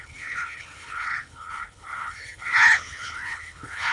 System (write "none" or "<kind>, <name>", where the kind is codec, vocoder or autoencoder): codec, HILCodec